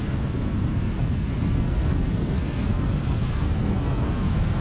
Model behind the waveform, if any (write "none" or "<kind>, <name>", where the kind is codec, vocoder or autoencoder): codec, SNAC